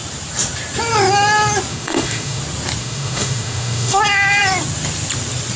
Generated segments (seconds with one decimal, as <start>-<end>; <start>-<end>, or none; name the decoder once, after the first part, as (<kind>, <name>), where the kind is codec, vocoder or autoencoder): 1.7-2.4 (autoencoder, DAC-VAE); 2.8-4.0

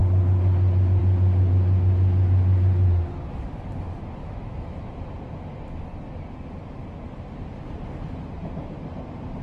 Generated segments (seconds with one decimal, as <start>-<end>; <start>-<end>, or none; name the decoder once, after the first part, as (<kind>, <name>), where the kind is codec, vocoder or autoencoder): 4.2-5.0 (autoencoder, DAC-VAE)

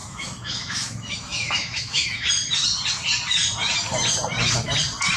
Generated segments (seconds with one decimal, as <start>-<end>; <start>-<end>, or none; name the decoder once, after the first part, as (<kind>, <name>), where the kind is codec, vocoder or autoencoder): 0.0-2.3 (autoencoder, DAC-VAE)

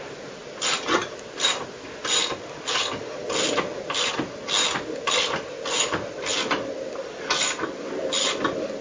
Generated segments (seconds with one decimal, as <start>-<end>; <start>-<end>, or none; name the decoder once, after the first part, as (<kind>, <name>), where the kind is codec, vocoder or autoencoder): none

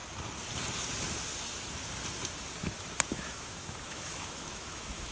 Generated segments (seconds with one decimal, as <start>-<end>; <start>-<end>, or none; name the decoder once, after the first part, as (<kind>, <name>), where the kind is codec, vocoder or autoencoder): 3.1-5.1 (autoencoder, DAC-VAE)

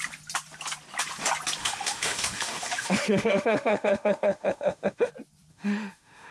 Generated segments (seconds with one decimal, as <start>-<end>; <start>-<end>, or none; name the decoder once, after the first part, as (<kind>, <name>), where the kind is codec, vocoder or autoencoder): 1.6-5.1 (autoencoder, DAC-VAE); 5.5-6.3